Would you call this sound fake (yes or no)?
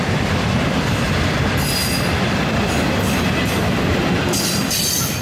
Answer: yes